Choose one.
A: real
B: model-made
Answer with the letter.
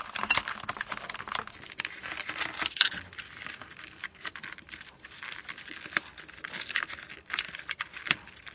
A